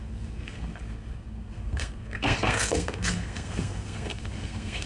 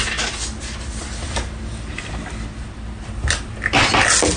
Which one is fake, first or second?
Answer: first